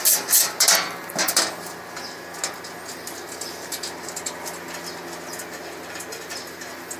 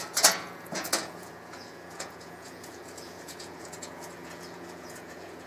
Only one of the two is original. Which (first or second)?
first